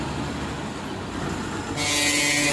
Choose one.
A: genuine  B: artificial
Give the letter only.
A